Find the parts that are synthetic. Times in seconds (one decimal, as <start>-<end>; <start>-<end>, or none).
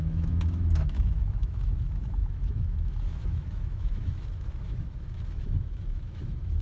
0.0-6.6